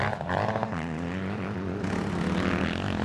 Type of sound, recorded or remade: recorded